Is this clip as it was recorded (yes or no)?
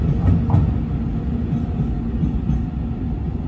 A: yes